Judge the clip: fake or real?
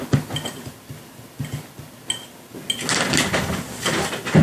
real